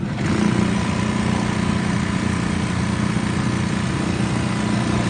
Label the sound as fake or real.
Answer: real